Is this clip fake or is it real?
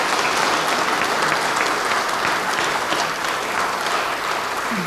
real